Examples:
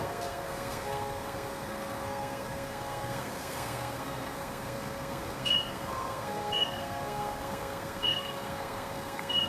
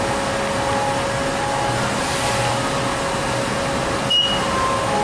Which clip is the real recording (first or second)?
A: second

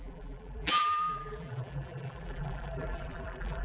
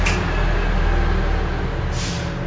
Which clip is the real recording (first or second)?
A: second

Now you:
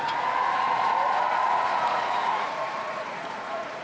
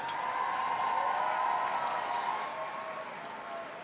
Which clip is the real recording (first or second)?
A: second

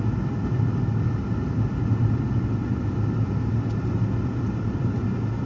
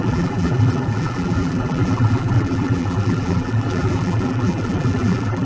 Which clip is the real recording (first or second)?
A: first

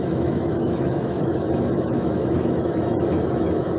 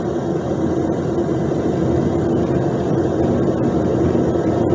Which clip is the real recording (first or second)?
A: second